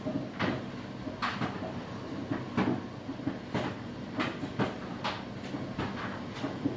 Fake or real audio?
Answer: real